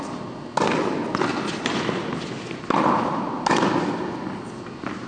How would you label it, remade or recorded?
recorded